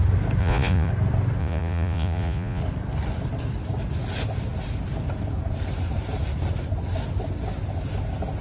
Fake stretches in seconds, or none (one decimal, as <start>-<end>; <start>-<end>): 0.4-0.9; 1.4-2.6